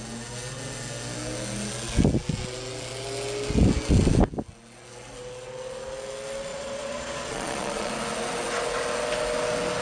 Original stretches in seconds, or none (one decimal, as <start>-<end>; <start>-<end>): 0.0-6.5; 7.9-9.8